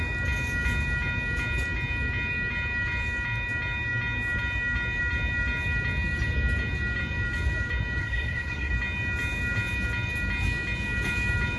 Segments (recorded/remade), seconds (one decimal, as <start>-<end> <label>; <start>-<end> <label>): 0.0-8.0 recorded; 8.0-8.7 remade; 8.7-11.6 recorded